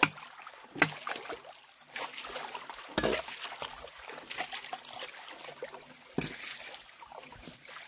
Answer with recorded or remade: recorded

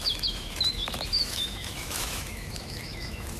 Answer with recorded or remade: remade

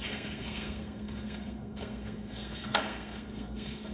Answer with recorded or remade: remade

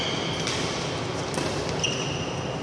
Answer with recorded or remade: recorded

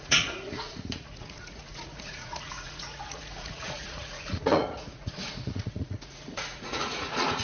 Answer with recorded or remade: remade